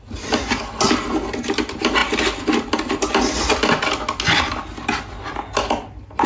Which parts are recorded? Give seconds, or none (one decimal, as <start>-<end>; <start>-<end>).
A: 0.0-6.3